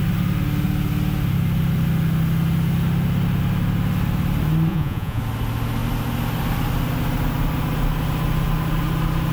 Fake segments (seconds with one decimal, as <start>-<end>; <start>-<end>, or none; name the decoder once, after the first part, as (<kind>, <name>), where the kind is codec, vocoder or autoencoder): 4.7-5.2 (vocoder, Vocos)